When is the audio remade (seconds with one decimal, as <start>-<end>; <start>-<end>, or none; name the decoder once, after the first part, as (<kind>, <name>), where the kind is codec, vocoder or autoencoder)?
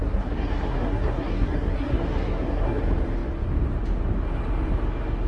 0.0-2.8 (codec, SNAC)